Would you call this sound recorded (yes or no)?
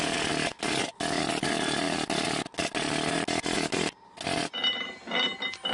yes